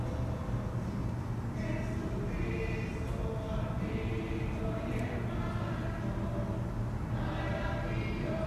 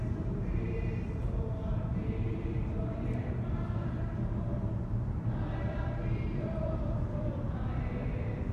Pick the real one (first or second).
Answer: first